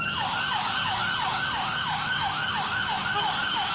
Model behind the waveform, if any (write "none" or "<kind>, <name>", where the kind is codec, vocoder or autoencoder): codec, DAC